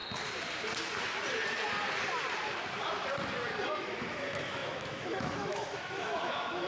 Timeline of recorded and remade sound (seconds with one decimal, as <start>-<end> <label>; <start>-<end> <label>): 0.0-3.8 recorded; 3.8-6.7 remade